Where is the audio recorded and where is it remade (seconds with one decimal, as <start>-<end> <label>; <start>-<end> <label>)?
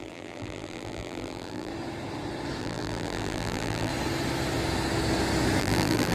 0.0-1.7 remade; 1.7-2.6 recorded; 2.6-3.9 remade; 3.9-5.6 recorded; 5.6-6.1 remade